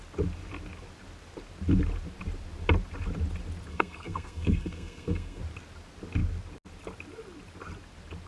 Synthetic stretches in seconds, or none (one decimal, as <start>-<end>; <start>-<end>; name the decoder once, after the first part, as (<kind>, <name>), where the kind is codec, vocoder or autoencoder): 3.7-5.4 (codec, SNAC)